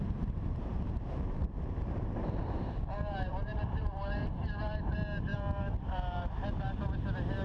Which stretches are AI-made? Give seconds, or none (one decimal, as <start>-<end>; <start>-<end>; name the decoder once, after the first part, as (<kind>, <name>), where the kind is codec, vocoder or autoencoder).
0.0-7.4 (vocoder, BigVGAN v2)